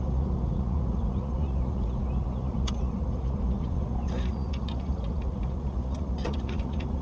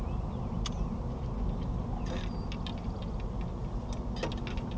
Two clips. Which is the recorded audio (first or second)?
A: second